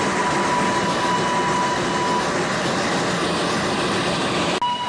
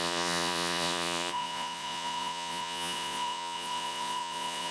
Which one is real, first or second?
first